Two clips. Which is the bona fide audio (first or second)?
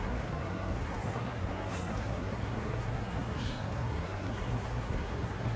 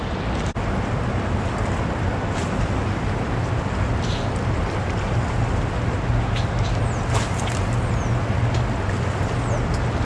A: second